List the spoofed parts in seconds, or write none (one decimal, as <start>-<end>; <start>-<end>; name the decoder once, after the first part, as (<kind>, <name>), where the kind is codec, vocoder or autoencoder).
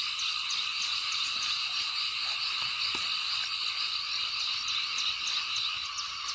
0.7-2.5 (vocoder, BigVGAN v2)